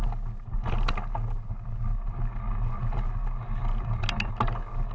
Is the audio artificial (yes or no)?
no